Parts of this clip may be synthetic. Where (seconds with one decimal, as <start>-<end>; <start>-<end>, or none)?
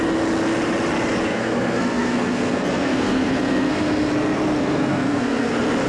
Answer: 1.3-4.1; 4.6-5.5